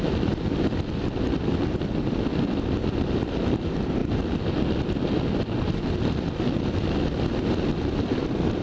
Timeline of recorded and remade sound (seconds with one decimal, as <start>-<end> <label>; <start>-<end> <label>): 0.0-8.6 recorded